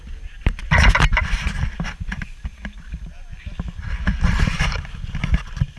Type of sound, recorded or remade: recorded